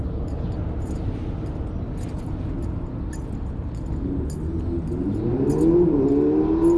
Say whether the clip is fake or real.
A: real